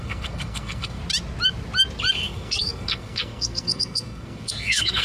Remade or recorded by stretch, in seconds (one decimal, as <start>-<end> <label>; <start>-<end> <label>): 0.0-1.0 remade; 1.0-2.1 recorded; 2.1-5.0 remade